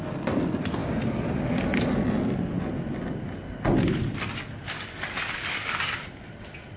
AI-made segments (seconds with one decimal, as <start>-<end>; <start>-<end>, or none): none